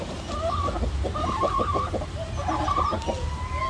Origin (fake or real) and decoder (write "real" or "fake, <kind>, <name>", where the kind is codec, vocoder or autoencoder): real